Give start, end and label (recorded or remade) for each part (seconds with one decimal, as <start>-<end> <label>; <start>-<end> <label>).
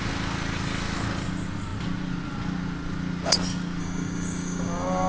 0.0-3.8 recorded; 3.8-5.1 remade